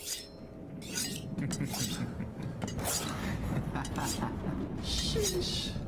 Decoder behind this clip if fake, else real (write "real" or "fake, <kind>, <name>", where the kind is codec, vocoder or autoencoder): real